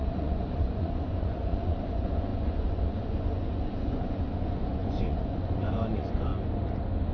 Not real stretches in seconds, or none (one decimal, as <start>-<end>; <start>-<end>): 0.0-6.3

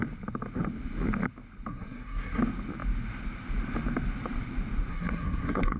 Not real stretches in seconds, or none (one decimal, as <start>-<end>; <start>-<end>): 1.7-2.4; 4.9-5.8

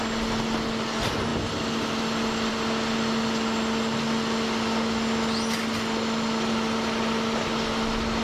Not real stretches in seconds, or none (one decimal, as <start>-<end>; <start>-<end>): none